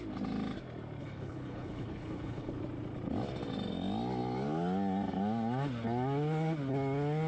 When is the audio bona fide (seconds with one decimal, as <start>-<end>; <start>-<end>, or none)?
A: 0.0-1.0; 2.6-7.3